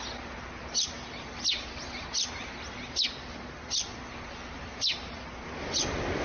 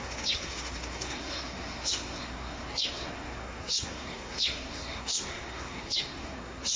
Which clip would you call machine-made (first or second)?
second